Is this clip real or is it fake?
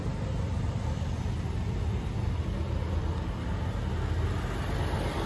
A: real